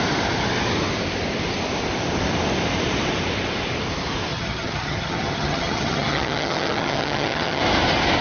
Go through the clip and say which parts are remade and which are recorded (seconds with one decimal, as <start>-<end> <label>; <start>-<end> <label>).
0.0-4.3 recorded; 4.3-7.6 remade; 7.6-8.2 recorded